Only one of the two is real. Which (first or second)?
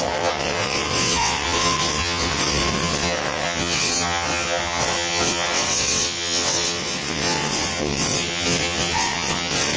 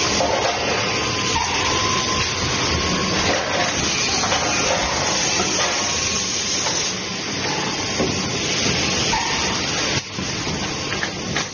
second